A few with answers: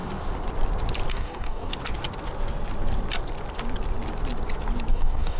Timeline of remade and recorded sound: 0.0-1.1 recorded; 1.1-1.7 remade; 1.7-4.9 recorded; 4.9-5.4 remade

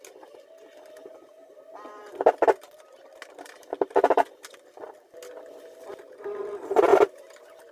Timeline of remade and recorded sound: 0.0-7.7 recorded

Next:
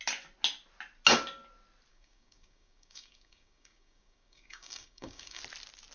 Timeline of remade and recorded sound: 0.0-1.9 recorded; 1.9-5.4 remade; 5.4-5.9 recorded

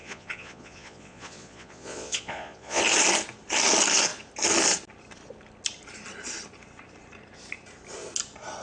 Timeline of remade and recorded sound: 0.0-2.8 remade; 2.8-8.6 recorded

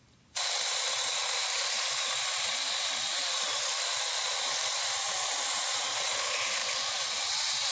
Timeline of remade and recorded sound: 0.0-6.6 remade; 6.6-7.3 recorded; 7.3-7.7 remade

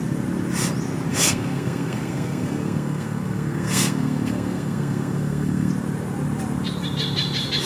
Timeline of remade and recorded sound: 0.0-1.1 recorded; 1.1-5.7 remade; 5.7-7.7 recorded